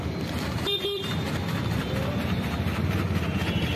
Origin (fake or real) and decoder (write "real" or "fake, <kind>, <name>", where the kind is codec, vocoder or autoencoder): real